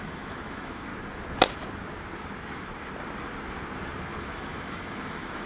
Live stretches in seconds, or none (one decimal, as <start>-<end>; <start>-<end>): 0.9-4.2